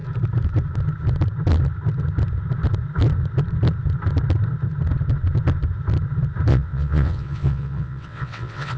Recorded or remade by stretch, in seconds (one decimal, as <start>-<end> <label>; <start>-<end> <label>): 0.0-6.5 recorded; 6.5-8.8 remade